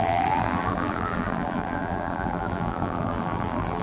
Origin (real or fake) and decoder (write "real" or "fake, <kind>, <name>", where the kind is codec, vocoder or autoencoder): fake, vocoder, BigVGAN v2